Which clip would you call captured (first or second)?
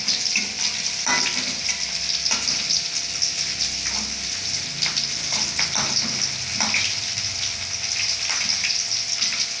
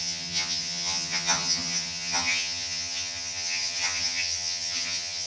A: first